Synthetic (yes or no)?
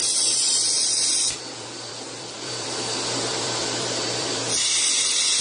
yes